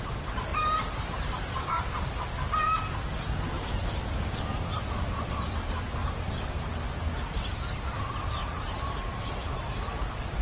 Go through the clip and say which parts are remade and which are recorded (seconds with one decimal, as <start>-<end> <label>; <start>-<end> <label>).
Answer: 0.0-0.5 recorded; 0.5-1.8 remade; 1.8-6.0 recorded; 6.0-7.6 remade; 7.6-8.4 recorded; 8.4-9.3 remade; 9.3-10.4 recorded